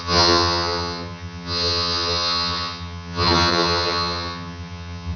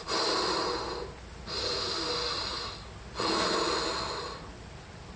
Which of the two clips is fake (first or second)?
first